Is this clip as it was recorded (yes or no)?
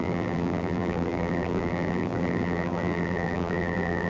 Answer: no